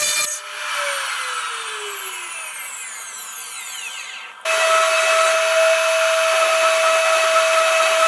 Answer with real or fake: real